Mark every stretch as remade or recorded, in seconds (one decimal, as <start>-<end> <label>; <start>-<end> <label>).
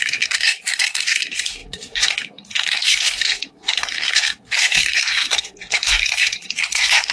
0.0-7.1 remade